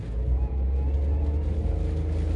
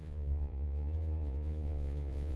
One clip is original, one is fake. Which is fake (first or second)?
second